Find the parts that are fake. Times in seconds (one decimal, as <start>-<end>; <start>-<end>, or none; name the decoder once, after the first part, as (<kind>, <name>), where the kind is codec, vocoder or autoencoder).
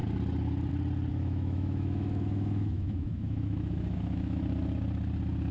1.1-4.4 (autoencoder, DAC-VAE)